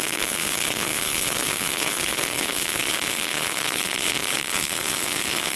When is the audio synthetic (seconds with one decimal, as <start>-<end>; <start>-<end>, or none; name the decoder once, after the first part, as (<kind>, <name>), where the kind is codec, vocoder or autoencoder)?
0.0-5.6 (codec, HILCodec)